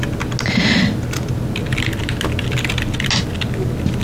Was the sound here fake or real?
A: real